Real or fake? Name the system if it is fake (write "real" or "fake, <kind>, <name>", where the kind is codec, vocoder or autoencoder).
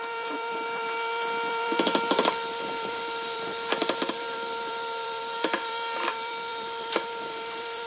fake, vocoder, BigVGAN v2